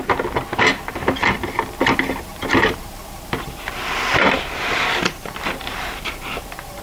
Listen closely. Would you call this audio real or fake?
fake